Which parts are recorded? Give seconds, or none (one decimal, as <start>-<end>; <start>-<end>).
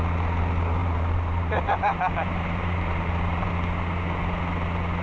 0.0-0.8; 3.5-5.0